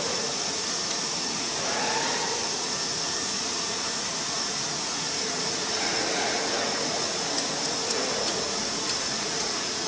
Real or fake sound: fake